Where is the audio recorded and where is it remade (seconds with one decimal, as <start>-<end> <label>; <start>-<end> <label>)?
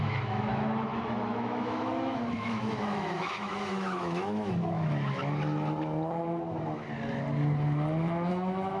0.0-5.2 remade; 5.2-8.3 recorded; 8.3-8.8 remade